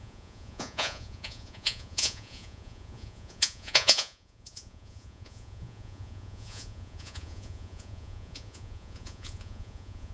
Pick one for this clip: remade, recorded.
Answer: remade